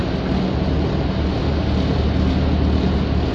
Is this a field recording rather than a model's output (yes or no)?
yes